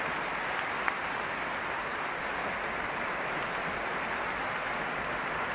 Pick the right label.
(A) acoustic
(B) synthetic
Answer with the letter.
A